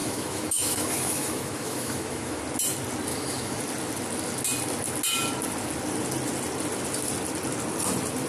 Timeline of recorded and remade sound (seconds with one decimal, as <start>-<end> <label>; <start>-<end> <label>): 0.0-2.4 remade; 2.4-3.1 recorded; 3.1-3.6 remade; 3.6-8.3 recorded